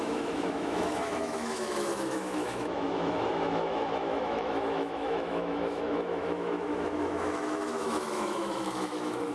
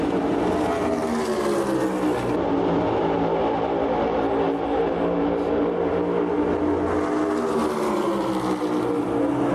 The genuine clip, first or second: second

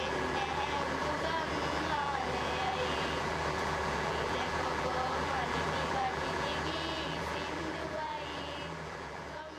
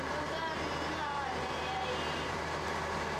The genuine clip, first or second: second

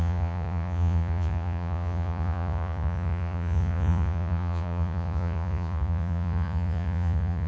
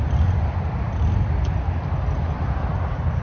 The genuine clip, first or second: second